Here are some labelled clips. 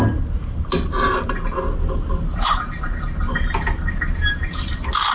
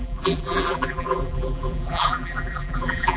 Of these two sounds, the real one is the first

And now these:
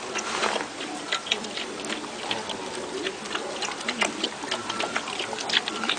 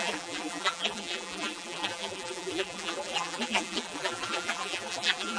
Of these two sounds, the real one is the first